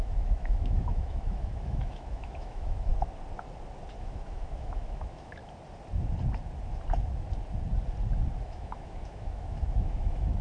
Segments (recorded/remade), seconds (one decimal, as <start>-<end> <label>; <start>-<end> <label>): 0.0-2.9 remade; 2.9-4.0 recorded; 4.0-5.4 remade; 5.4-8.4 recorded; 8.4-10.4 remade